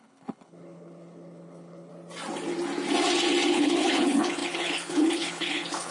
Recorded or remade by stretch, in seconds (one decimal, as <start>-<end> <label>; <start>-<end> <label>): 0.0-1.9 remade; 1.9-3.5 recorded; 3.5-5.9 remade